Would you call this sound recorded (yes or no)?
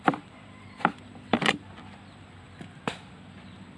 no